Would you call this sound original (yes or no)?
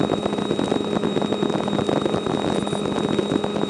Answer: yes